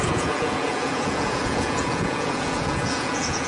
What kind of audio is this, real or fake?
fake